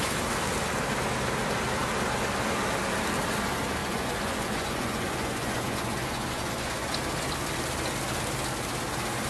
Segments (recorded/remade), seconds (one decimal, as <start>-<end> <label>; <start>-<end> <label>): 0.0-3.8 recorded; 3.8-6.9 remade; 6.9-9.3 recorded